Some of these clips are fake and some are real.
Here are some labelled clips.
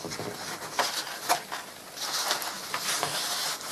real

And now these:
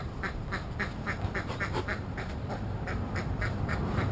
fake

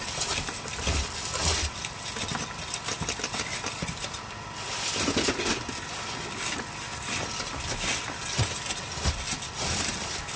fake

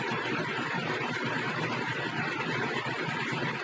fake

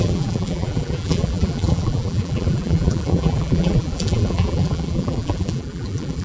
fake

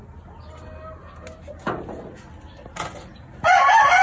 real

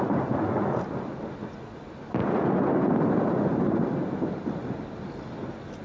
real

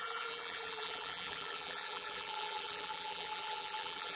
fake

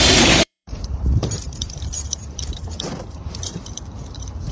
fake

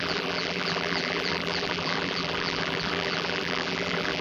fake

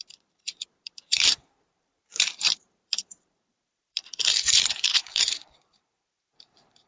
fake